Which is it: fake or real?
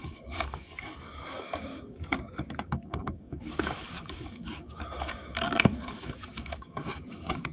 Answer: fake